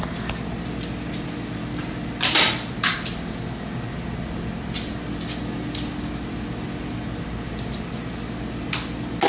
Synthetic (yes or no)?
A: no